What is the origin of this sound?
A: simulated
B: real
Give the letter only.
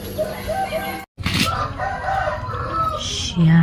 B